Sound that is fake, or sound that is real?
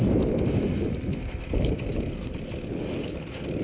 real